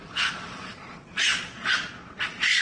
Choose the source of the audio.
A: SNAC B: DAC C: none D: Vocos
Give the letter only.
D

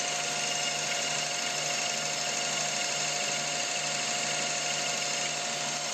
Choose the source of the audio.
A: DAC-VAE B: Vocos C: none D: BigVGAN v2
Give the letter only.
C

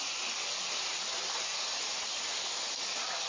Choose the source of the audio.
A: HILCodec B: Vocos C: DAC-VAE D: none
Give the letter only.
D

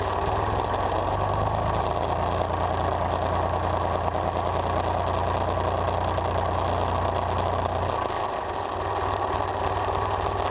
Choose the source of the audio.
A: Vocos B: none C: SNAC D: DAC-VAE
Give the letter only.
B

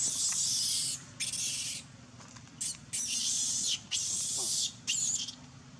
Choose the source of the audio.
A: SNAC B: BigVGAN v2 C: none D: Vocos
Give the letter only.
C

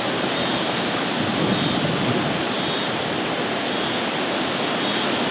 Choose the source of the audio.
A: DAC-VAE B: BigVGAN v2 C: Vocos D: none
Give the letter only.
D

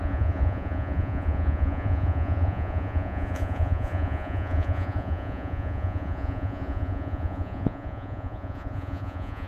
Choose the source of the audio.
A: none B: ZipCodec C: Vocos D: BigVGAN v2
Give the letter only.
C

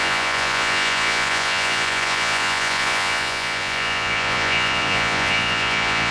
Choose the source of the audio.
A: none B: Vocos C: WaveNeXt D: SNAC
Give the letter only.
B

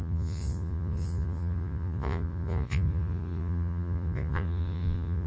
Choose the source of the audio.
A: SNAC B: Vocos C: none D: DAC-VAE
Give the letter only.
B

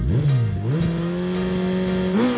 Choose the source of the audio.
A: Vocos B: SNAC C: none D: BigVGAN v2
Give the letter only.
C